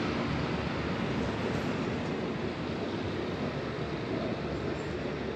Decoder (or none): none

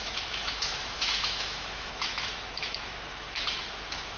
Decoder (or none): autoencoder, DAC-VAE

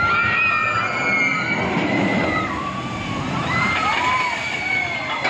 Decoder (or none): none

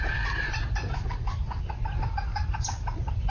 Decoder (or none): none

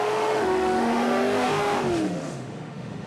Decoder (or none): autoencoder, DAC-VAE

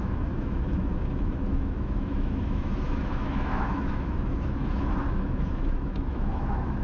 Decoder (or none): autoencoder, DAC-VAE